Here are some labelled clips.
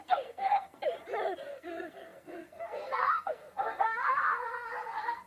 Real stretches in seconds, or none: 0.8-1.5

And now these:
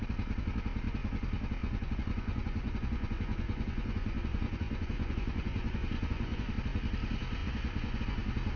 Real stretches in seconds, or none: 0.0-1.6; 6.5-7.4; 8.0-8.6

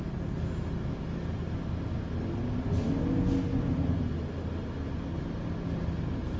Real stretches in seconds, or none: 0.0-6.4

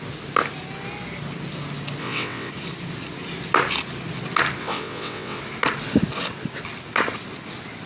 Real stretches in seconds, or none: 0.0-2.0; 2.5-4.6; 5.4-7.9

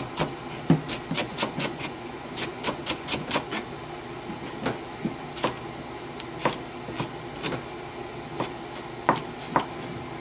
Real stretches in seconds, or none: 0.0-1.2; 3.4-10.2

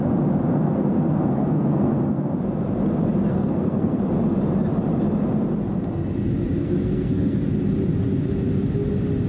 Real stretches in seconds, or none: 0.0-0.5; 2.3-3.3; 4.0-6.6; 7.4-9.3

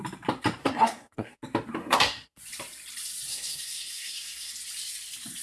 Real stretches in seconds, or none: 0.0-0.6; 1.4-1.8; 2.4-3.3; 4.5-5.4

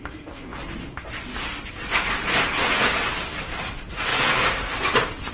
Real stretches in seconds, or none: 0.0-5.3